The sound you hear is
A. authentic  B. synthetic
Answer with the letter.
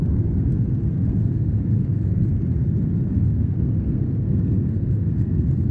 B